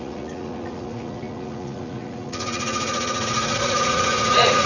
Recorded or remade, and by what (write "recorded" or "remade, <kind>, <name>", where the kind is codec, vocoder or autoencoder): remade, vocoder, Vocos